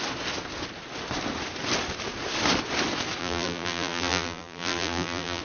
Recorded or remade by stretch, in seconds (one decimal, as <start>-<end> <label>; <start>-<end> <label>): 0.0-3.2 recorded; 3.2-5.4 remade